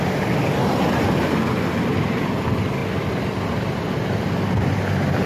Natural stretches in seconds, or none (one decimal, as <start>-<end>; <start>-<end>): 0.0-5.3